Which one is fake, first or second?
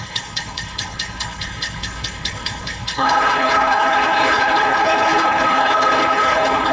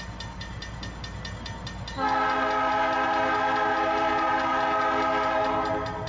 first